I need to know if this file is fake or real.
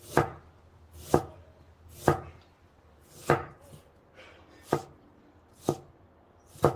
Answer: real